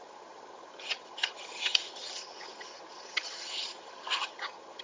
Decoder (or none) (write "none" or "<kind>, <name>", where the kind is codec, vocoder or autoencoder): vocoder, HiFi-GAN